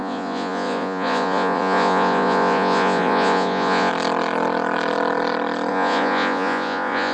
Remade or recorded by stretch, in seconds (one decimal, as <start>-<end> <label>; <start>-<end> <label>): 0.0-3.9 remade; 3.9-5.7 recorded; 5.7-7.1 remade